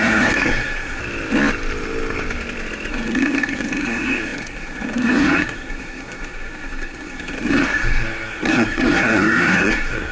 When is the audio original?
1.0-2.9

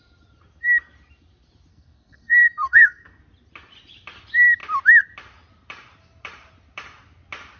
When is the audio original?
0.0-1.7; 3.2-7.6